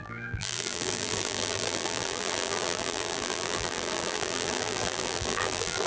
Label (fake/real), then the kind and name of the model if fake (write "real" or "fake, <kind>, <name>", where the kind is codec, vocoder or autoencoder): fake, vocoder, BigVGAN v2